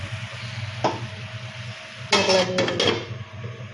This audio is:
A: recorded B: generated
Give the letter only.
A